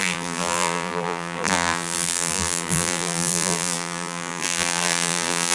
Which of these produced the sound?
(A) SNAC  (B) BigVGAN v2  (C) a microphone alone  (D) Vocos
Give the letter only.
B